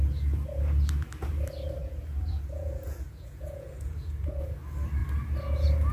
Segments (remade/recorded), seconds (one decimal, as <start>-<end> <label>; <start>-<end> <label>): 0.0-1.8 recorded; 1.8-4.4 remade; 4.4-5.9 recorded